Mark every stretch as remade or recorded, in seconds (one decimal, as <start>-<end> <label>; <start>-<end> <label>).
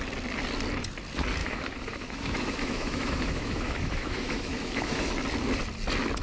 0.0-1.4 recorded; 1.4-5.1 remade; 5.1-6.2 recorded